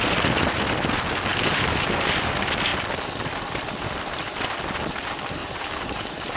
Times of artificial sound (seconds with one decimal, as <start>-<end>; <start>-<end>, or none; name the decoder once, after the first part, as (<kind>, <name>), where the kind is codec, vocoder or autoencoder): 1.3-2.1 (vocoder, BigVGAN v2); 5.4-6.4